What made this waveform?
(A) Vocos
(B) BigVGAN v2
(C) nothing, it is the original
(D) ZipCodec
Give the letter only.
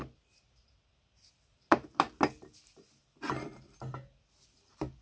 C